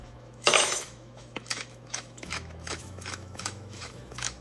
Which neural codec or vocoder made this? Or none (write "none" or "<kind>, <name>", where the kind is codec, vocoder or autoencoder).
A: autoencoder, DAC-VAE